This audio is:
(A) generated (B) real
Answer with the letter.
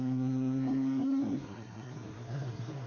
A